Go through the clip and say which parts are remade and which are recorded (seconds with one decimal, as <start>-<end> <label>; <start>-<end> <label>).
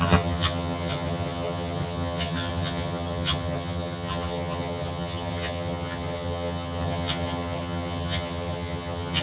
0.0-9.2 remade